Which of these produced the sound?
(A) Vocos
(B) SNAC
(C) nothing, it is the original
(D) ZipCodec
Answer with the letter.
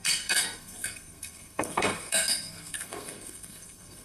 B